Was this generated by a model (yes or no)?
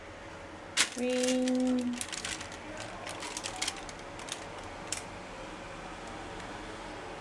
no